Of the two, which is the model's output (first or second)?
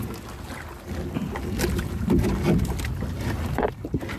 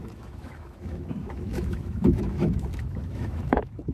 second